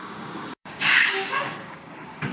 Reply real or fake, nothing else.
fake